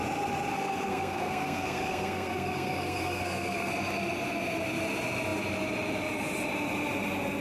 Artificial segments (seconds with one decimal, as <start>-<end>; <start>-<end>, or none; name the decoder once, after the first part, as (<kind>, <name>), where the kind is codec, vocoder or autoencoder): 0.5-3.7 (codec, SNAC)